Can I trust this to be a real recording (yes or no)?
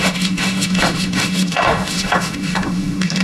no